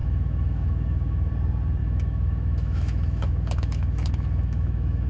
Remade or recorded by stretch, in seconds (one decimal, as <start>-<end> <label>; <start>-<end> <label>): 0.0-1.3 remade; 1.3-1.8 recorded; 1.8-5.1 remade